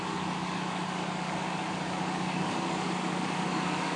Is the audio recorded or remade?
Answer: remade